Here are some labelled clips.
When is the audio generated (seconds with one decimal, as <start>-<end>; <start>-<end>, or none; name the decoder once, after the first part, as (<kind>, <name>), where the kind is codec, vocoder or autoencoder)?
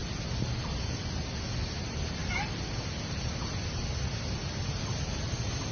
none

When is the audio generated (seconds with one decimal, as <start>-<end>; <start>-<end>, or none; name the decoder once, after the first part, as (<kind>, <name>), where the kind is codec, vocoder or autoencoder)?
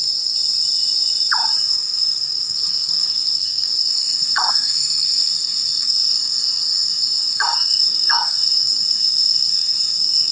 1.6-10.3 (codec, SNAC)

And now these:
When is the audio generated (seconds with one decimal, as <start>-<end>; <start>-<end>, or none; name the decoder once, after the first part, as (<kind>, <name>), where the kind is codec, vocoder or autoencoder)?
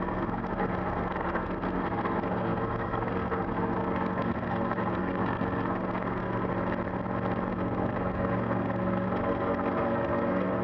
0.0-6.5 (codec, SNAC); 7.5-10.6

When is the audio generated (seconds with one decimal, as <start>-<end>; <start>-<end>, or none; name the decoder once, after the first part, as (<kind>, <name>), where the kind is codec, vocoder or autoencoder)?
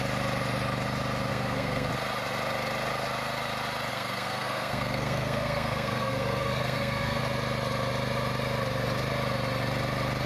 1.3-1.9 (codec, SNAC); 3.9-7.2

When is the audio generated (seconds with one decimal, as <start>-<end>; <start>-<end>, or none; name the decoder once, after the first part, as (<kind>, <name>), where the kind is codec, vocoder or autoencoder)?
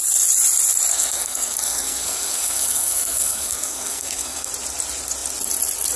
0.9-4.5 (codec, SNAC)